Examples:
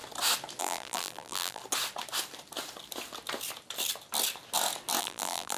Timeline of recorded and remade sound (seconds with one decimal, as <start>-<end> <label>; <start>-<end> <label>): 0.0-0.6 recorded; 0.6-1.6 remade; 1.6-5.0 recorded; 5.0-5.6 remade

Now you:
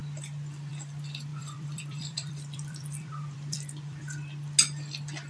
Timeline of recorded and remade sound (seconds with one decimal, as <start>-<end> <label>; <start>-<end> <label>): 0.0-1.3 recorded; 1.3-4.0 remade; 4.0-5.3 recorded

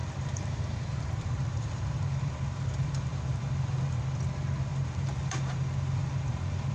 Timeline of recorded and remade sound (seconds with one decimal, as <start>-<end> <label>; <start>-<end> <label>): 0.0-4.0 remade; 4.0-4.7 recorded; 4.7-6.7 remade

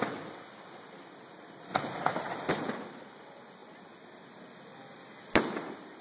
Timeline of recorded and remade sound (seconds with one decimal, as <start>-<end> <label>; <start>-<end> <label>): 0.0-6.0 recorded

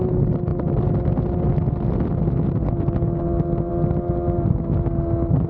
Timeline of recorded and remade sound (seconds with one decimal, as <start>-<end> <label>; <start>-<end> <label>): 0.0-5.5 recorded

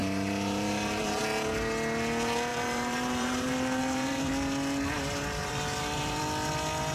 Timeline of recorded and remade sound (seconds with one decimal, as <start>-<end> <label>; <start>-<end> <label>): 0.0-1.2 remade; 1.2-2.5 recorded; 2.5-4.3 remade; 4.3-5.4 recorded; 5.4-6.2 remade; 6.2-6.9 recorded

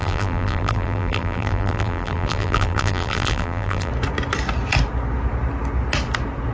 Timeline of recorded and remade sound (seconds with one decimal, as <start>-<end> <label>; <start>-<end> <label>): 0.0-3.9 remade; 3.9-6.5 recorded

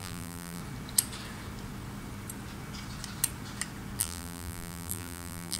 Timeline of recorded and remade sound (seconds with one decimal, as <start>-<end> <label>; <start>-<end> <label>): 0.0-0.6 remade; 0.6-4.0 recorded; 4.0-5.6 remade